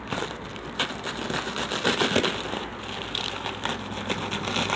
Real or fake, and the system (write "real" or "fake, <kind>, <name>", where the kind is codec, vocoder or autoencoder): real